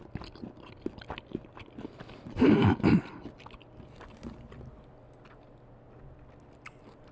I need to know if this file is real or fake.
real